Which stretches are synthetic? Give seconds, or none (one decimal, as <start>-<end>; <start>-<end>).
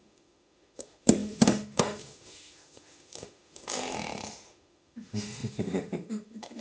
0.0-6.6